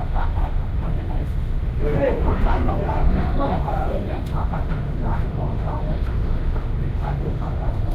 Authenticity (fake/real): fake